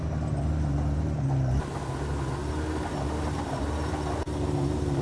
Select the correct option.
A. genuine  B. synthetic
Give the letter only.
A